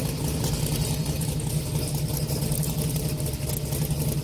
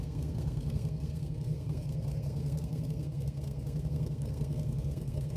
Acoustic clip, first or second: first